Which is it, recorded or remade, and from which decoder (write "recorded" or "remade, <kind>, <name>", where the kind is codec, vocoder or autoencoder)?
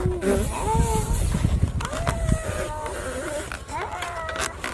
recorded